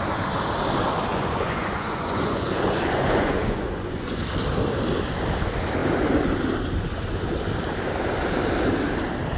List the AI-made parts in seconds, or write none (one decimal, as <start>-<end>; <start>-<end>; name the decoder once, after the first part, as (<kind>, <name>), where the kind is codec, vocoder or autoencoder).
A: 1.1-4.2 (vocoder, Vocos)